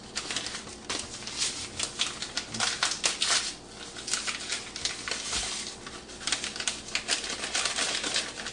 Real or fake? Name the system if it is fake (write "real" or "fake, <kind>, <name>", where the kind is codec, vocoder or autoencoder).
real